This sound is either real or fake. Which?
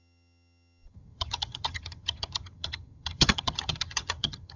fake